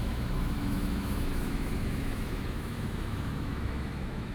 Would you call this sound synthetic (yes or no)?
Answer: yes